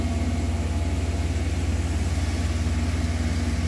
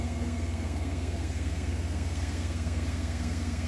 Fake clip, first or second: second